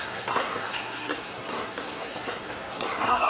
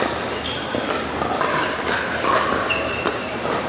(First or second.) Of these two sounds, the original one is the second